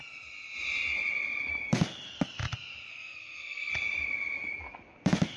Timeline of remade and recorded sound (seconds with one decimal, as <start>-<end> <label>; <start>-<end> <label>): 0.0-2.9 recorded; 2.9-3.7 remade; 3.7-5.4 recorded